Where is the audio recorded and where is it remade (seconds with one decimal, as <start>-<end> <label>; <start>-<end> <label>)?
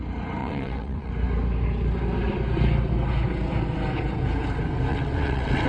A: 0.0-0.4 recorded; 0.4-1.1 remade; 1.1-4.9 recorded; 4.9-5.7 remade